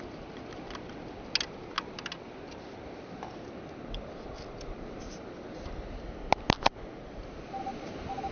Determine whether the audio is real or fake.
real